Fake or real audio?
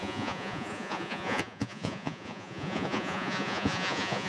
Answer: fake